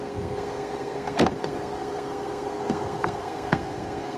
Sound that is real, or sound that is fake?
fake